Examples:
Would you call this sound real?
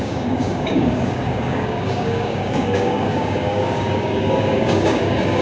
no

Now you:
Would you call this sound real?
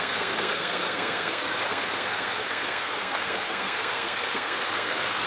no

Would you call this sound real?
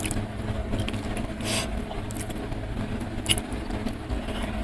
yes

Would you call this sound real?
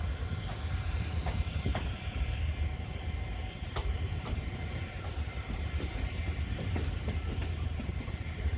no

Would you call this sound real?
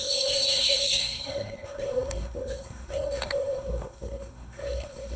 no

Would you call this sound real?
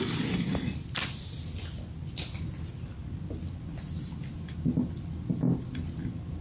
yes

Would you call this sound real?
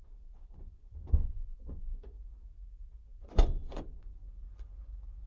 no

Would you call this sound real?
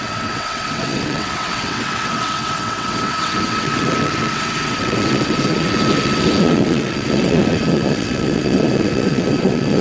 no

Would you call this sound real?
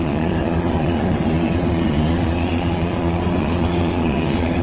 no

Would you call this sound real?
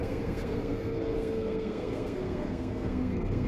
no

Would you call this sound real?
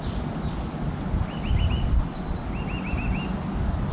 yes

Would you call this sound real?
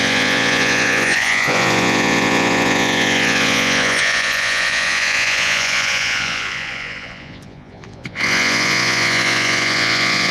no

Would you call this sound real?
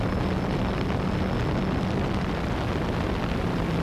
yes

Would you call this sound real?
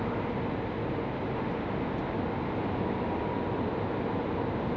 yes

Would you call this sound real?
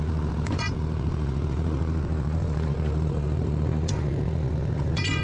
no